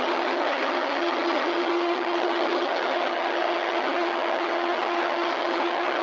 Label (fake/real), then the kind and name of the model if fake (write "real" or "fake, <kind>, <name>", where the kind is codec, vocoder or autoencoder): fake, vocoder, HiFi-GAN